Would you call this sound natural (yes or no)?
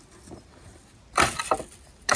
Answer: yes